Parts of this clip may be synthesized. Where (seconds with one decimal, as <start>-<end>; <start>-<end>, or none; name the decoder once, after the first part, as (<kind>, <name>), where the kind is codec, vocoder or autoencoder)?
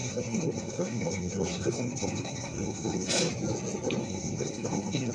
0.0-3.1 (codec, SNAC); 4.0-5.1